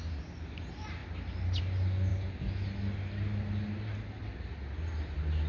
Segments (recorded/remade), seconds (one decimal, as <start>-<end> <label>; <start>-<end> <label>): 0.0-5.5 recorded